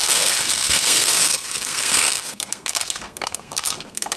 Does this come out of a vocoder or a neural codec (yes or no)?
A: yes